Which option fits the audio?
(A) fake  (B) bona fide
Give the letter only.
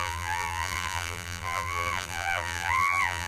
A